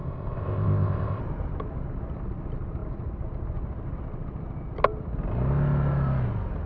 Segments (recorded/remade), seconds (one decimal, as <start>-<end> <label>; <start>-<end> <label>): 0.0-1.2 remade; 1.2-6.7 recorded